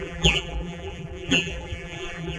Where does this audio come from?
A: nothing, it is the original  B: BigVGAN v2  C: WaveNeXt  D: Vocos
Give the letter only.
B